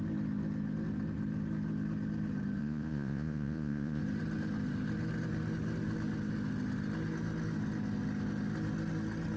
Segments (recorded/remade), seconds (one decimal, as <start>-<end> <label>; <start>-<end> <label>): 0.0-2.6 recorded; 2.6-4.0 remade; 4.0-9.4 recorded